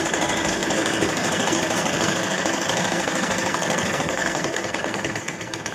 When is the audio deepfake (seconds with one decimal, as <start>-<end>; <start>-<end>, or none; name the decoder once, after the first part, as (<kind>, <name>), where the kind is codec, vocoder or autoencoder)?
0.0-5.7 (codec, SNAC)